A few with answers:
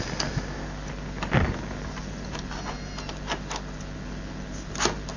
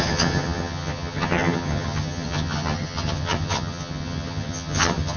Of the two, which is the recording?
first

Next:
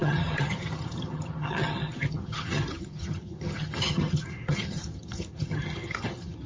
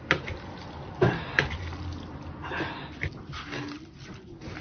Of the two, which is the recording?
second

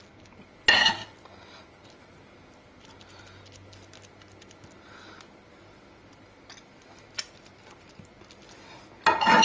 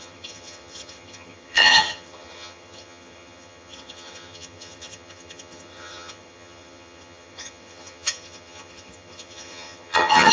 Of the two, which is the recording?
first